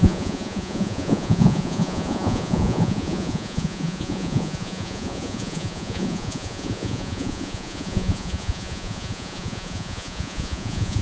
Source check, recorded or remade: remade